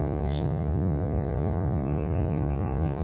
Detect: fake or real fake